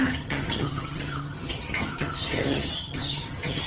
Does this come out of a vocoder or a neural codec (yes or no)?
yes